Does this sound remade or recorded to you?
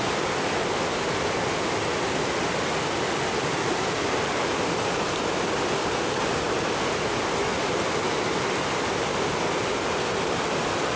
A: recorded